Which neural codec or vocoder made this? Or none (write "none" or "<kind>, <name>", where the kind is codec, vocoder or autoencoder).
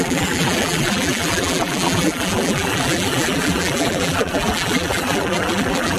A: vocoder, BigVGAN v2